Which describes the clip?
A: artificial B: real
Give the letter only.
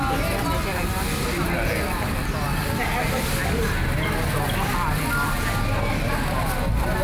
B